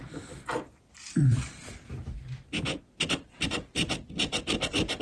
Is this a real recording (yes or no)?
yes